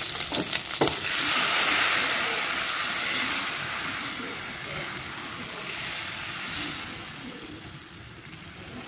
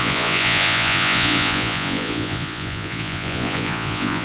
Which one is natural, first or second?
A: first